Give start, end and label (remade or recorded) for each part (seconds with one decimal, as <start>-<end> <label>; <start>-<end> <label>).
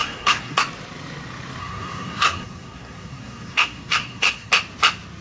0.0-0.6 remade; 0.6-1.6 recorded; 1.6-4.5 remade; 4.5-5.2 recorded